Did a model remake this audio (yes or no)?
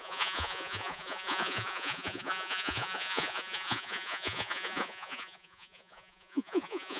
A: yes